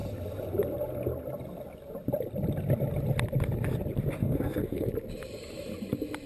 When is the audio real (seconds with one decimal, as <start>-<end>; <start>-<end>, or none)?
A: 0.0-4.2; 4.9-6.3